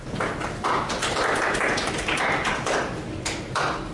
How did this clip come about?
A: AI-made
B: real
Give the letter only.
B